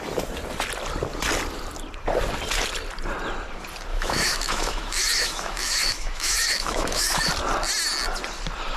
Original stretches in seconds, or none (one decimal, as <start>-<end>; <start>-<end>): 0.0-3.9; 7.3-8.8